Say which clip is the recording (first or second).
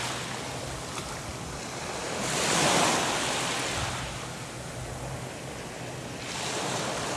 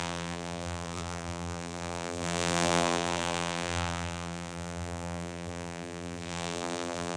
first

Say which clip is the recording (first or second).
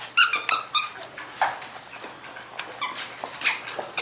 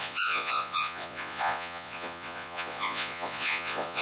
first